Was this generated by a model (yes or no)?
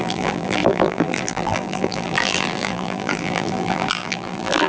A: yes